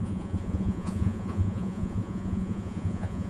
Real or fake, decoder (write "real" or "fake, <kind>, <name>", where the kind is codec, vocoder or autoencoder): fake, vocoder, Vocos